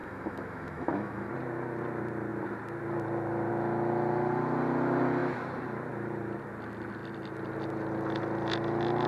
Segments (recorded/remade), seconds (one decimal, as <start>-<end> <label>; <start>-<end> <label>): 0.0-1.3 remade; 1.3-9.1 recorded